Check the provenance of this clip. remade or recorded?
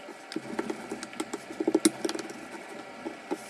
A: recorded